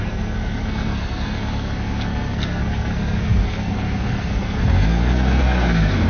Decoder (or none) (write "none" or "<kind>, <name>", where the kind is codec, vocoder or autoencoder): codec, SNAC